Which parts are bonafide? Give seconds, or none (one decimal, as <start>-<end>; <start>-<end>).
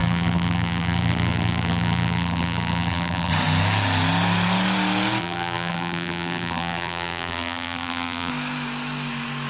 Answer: 3.3-5.2; 8.3-9.5